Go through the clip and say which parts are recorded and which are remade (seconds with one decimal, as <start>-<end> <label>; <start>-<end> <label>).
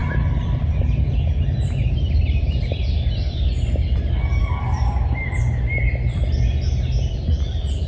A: 0.0-7.9 recorded